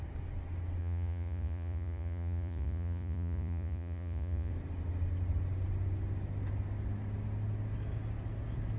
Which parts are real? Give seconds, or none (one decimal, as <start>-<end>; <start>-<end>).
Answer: 0.0-0.8; 4.5-8.8